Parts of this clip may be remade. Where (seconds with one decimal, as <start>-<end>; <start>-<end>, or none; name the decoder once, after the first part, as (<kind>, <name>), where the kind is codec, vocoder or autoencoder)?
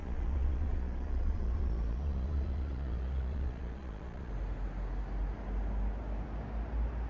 0.0-4.3 (vocoder, Vocos)